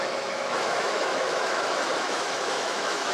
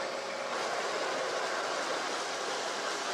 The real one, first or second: second